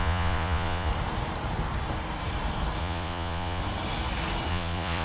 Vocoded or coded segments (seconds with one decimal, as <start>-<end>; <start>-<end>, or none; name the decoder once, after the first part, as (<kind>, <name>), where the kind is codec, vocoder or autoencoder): 0.0-0.9 (vocoder, Vocos); 2.8-3.6; 4.5-5.0